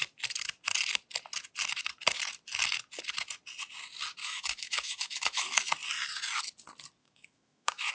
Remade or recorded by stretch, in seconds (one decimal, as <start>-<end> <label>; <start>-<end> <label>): 0.0-4.2 recorded; 4.2-5.7 remade; 5.7-7.0 recorded; 7.0-7.9 remade